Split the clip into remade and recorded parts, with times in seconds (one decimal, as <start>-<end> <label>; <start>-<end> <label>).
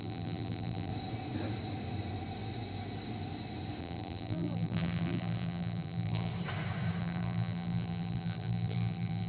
0.0-0.9 remade; 0.9-3.8 recorded; 3.8-6.3 remade; 6.3-7.0 recorded; 7.0-9.3 remade